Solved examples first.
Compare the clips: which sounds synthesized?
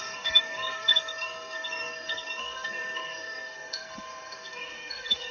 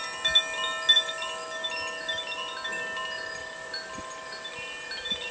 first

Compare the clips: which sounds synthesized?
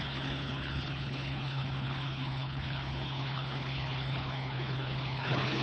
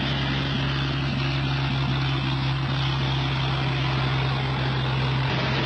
first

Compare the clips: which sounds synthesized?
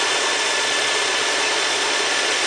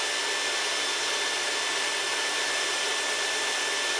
first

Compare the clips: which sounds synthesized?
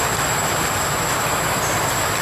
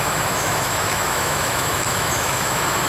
second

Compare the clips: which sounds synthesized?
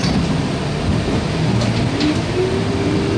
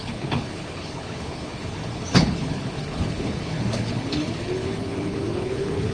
second